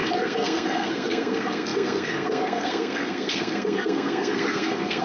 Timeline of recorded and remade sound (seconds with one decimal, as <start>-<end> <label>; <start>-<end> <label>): 0.0-5.0 remade